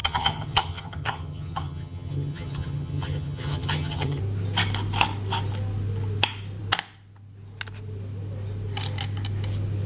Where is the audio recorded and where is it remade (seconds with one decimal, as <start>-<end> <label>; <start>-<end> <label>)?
0.0-4.2 remade; 4.2-9.9 recorded